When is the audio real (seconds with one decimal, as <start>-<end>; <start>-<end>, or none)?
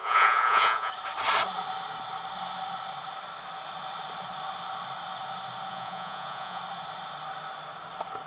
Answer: 0.9-5.7; 6.6-8.3